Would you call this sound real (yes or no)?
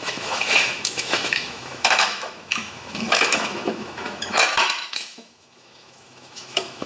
no